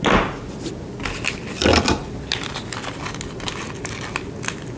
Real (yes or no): yes